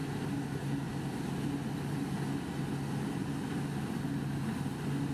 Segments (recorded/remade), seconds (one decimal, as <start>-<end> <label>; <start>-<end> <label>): 0.0-5.1 recorded

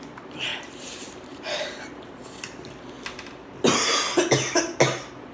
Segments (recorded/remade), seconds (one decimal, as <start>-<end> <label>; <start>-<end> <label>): 0.0-2.2 remade; 2.2-5.3 recorded

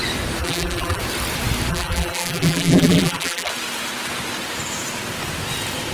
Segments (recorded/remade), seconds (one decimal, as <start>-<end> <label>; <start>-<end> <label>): 0.0-0.4 recorded; 0.4-1.0 remade; 1.0-1.7 recorded; 1.7-3.5 remade; 3.5-5.9 recorded

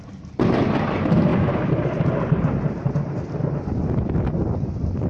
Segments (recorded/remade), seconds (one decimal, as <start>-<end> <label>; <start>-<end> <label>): 0.0-1.3 recorded; 1.3-2.9 remade; 2.9-5.1 recorded